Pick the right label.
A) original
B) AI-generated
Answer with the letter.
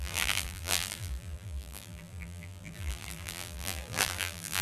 B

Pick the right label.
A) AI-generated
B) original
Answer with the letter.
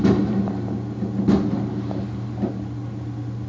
B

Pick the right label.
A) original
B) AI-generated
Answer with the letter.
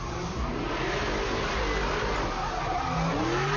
A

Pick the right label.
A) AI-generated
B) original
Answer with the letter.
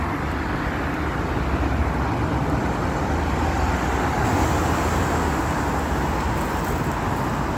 B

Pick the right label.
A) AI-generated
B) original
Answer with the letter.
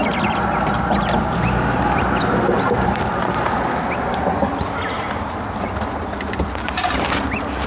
B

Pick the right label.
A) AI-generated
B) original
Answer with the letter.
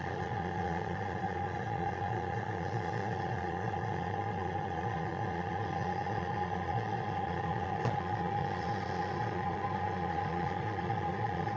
A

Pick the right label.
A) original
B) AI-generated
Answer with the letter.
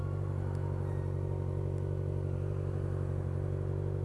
A